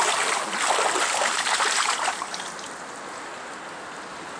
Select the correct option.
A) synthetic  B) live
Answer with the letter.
B